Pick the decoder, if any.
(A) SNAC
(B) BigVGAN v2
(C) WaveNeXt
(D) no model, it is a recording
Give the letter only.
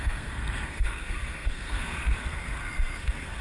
A